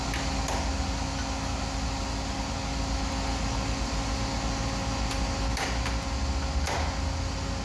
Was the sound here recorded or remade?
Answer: recorded